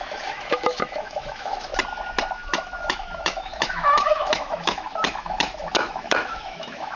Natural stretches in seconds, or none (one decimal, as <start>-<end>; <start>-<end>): 1.7-2.3